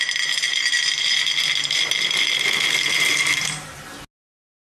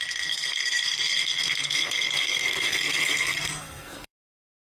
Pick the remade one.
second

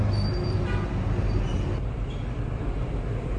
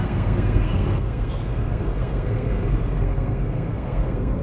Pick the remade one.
second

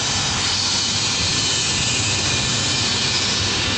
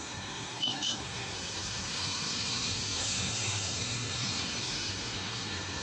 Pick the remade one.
second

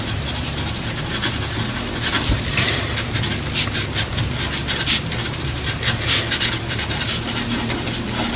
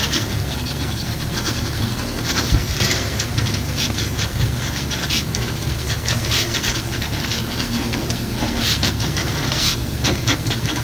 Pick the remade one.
second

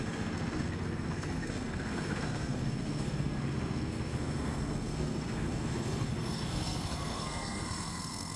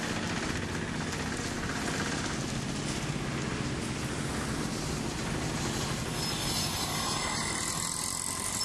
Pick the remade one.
first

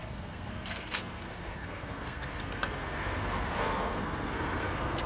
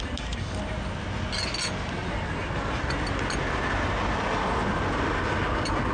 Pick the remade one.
first